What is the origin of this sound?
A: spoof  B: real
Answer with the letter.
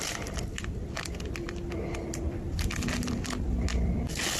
B